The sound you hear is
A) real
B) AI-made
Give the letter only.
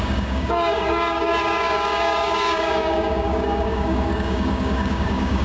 B